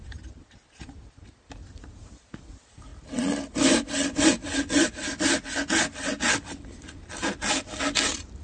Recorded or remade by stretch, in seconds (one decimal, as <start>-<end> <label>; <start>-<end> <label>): 0.0-8.4 recorded